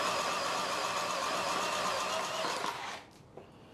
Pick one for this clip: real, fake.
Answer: real